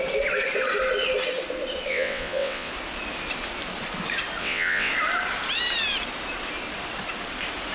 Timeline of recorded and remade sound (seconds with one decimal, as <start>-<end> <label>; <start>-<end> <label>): 0.0-1.9 recorded; 1.9-2.7 remade; 2.7-4.4 recorded; 4.4-4.9 remade; 4.9-7.7 recorded